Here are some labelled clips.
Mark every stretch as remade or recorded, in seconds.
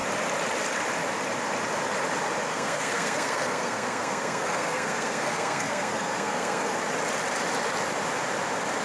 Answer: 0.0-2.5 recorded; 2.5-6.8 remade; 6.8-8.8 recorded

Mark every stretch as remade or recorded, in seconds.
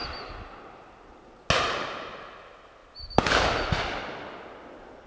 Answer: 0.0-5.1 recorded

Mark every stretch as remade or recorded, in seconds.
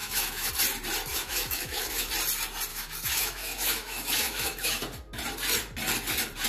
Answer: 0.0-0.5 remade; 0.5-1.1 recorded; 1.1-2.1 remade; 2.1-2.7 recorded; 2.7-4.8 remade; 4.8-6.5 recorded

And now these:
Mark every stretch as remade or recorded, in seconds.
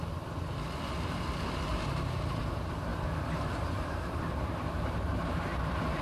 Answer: 0.0-1.7 recorded; 1.7-2.4 remade; 2.4-2.9 recorded; 2.9-6.0 remade